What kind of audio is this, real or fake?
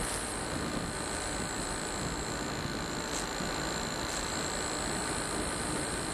real